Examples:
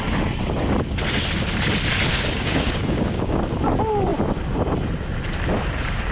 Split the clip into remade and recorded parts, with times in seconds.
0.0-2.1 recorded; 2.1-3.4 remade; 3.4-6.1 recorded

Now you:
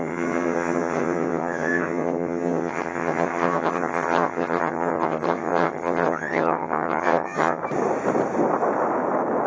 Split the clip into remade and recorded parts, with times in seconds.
0.0-7.6 remade; 7.6-9.5 recorded

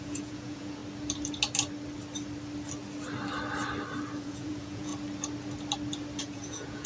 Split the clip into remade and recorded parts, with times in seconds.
0.0-0.8 remade; 0.8-4.2 recorded; 4.2-4.9 remade; 4.9-6.2 recorded; 6.2-6.9 remade

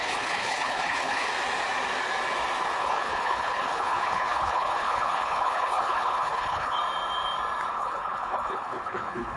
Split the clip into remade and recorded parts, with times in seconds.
0.0-1.3 remade; 1.3-2.8 recorded; 2.8-6.8 remade; 6.8-7.7 recorded; 7.7-9.4 remade

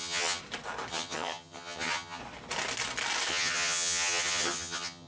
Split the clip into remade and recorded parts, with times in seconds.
0.0-0.4 remade; 0.4-0.9 recorded; 0.9-2.2 remade; 2.2-3.3 recorded; 3.3-5.1 remade

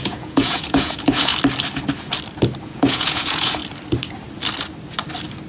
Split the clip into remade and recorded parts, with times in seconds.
0.0-1.3 remade; 1.3-2.6 recorded; 2.6-3.6 remade; 3.6-5.5 recorded

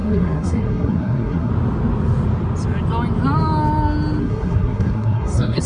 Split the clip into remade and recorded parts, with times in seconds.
0.0-1.5 remade; 1.5-4.2 recorded; 4.2-5.7 remade

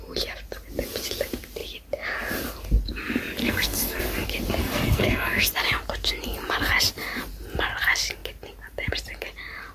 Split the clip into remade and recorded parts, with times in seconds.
0.0-3.4 recorded; 3.4-4.0 remade; 4.0-4.6 recorded; 4.6-5.5 remade; 5.5-9.7 recorded